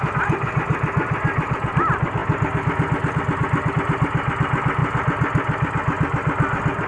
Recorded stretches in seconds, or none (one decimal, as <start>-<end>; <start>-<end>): 0.0-6.9